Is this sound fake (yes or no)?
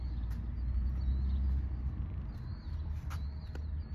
no